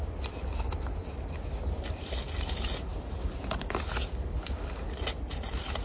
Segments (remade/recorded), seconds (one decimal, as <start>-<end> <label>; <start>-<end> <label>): 0.0-5.8 recorded